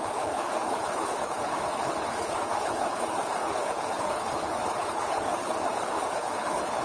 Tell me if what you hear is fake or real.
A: fake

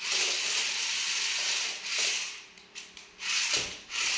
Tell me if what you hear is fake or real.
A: real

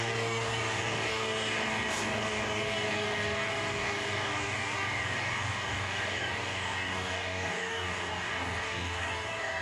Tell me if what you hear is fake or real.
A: fake